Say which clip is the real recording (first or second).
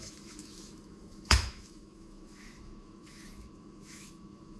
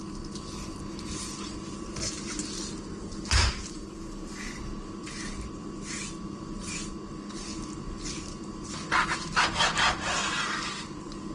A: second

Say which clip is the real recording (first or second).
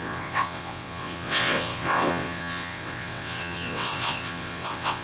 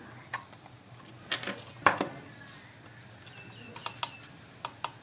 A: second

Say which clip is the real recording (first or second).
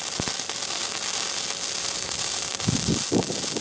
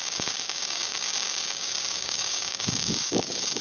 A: first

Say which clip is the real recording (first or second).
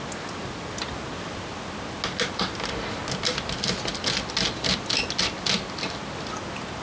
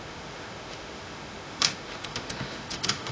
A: first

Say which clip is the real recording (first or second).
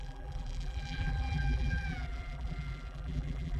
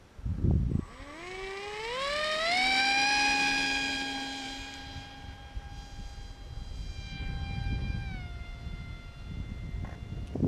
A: second